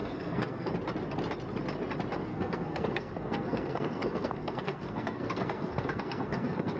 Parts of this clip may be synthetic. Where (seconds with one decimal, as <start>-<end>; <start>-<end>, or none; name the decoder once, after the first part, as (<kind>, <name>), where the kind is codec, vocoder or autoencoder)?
0.0-0.7 (codec, SNAC); 2.3-6.8